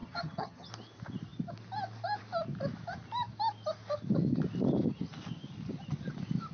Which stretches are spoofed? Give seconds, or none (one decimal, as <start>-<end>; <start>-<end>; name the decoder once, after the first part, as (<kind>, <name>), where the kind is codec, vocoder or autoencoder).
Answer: 0.0-0.7 (vocoder, HiFi-GAN)